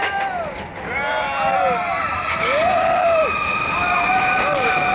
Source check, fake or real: real